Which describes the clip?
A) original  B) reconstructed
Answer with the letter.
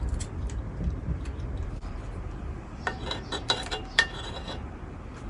B